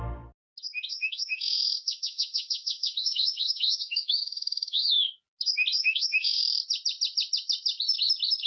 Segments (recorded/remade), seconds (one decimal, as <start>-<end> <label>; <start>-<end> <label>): 0.0-0.9 recorded; 0.9-5.1 remade; 5.1-5.8 recorded; 5.8-6.4 remade; 6.4-8.5 recorded